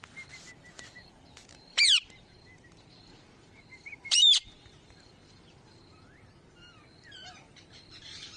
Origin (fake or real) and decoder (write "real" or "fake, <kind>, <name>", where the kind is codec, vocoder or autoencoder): fake, vocoder, BigVGAN v2